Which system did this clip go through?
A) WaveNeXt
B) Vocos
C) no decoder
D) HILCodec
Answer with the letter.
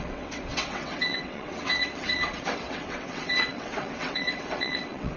A